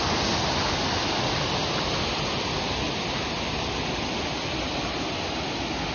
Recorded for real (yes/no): yes